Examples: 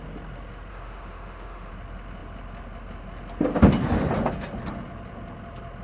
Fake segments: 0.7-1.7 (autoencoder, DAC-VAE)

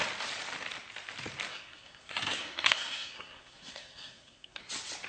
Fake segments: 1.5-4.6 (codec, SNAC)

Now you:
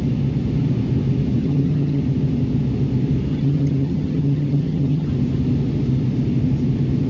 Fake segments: 1.4-2.0 (vocoder, HiFi-GAN); 3.3-5.1

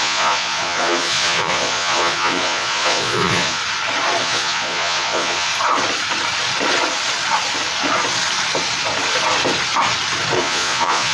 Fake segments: 0.0-3.6 (vocoder, Vocos); 4.2-5.5; 10.4-11.1

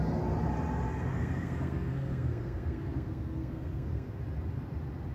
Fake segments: 1.1-4.2 (codec, SNAC)

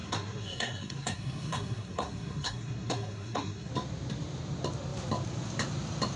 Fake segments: 0.0-3.7 (codec, SNAC)

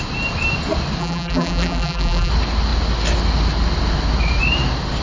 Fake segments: 1.0-2.3 (vocoder, BigVGAN v2)

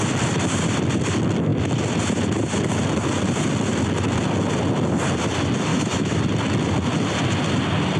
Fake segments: 5.7-6.2 (autoencoder, DAC-VAE)